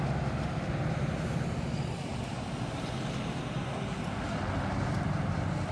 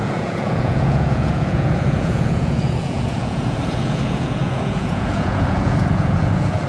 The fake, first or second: second